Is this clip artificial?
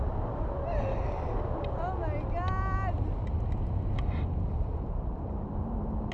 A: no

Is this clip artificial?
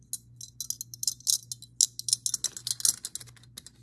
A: no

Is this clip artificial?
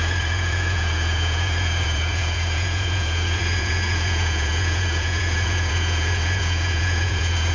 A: yes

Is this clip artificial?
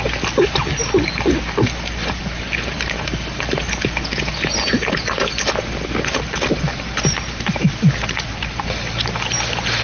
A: no